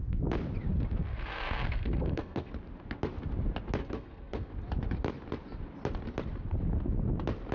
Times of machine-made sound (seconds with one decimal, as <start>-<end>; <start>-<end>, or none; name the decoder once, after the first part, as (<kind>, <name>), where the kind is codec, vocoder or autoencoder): 1.1-2.5 (codec, SNAC); 3.8-4.5